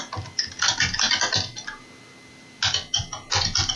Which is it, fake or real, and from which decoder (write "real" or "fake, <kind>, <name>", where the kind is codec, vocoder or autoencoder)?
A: real